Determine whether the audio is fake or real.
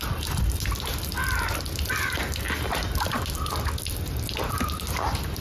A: real